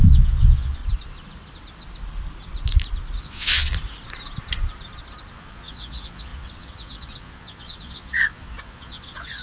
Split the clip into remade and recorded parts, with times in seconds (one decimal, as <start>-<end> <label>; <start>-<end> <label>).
0.0-0.8 remade; 0.8-3.2 recorded; 3.2-3.7 remade; 3.7-5.3 recorded; 5.3-9.4 remade